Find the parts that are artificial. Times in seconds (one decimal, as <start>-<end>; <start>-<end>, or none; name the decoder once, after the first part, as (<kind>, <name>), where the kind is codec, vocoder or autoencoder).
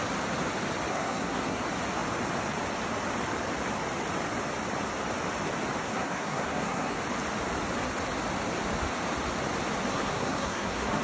0.9-1.6 (codec, SNAC); 5.8-7.0; 9.9-11.0